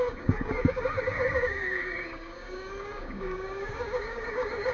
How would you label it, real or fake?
fake